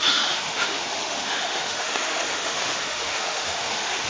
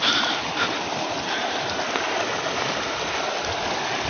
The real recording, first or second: second